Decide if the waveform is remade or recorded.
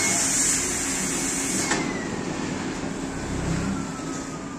recorded